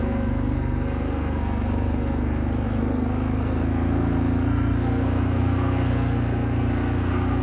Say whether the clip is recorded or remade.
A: remade